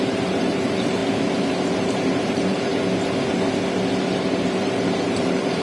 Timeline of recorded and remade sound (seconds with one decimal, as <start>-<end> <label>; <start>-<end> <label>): 0.0-1.0 remade; 1.0-1.5 recorded; 1.5-2.7 remade; 2.7-4.0 recorded; 4.0-5.6 remade

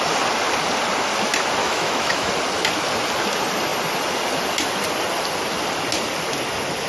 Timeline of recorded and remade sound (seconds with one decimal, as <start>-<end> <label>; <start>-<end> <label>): 0.0-1.6 recorded; 1.6-2.3 remade; 2.3-6.9 recorded

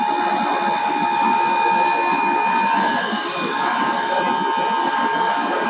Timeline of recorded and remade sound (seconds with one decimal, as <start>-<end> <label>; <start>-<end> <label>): 0.0-0.8 recorded; 0.8-4.2 remade; 4.2-4.8 recorded; 4.8-5.7 remade

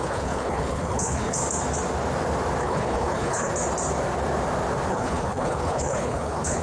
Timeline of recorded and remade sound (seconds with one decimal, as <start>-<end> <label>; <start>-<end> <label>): 0.0-1.4 remade; 1.4-2.6 recorded; 2.6-3.5 remade; 3.5-4.9 recorded; 4.9-6.6 remade